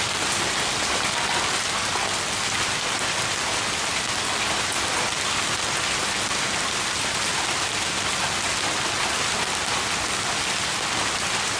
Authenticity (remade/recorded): recorded